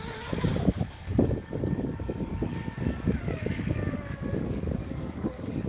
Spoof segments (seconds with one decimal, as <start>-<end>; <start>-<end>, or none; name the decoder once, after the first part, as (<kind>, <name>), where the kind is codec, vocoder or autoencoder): 0.0-5.7 (codec, DAC)

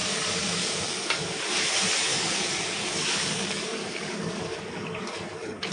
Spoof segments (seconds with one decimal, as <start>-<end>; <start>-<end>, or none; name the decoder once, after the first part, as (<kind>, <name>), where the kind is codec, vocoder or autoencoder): 0.0-1.4 (codec, DAC); 2.1-5.7

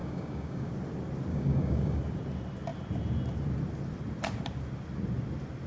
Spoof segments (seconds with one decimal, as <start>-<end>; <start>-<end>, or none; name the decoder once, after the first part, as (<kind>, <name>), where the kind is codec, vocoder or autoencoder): 0.0-0.7 (codec, DAC); 1.3-2.0

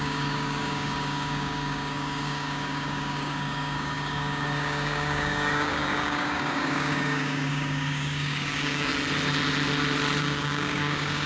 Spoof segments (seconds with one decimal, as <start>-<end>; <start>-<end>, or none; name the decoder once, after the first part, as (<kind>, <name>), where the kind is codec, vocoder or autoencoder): 0.0-8.9 (codec, DAC); 10.2-11.3